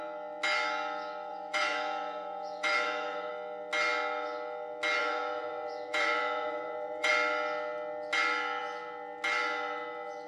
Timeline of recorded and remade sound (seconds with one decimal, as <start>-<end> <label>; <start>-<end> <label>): 0.0-1.3 recorded; 1.3-3.3 remade; 3.3-5.0 recorded; 5.0-7.1 remade; 7.1-10.3 recorded